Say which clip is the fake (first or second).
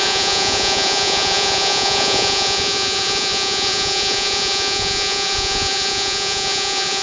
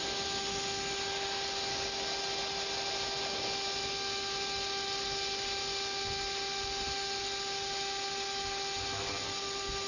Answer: first